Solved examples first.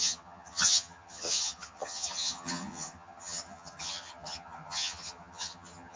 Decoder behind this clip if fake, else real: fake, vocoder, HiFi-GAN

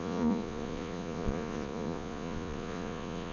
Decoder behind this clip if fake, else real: fake, vocoder, Vocos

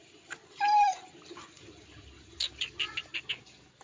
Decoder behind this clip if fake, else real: real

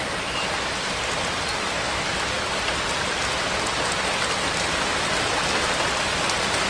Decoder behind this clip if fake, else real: real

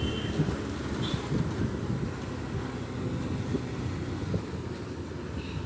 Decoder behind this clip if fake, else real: real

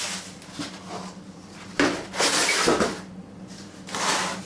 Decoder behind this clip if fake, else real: real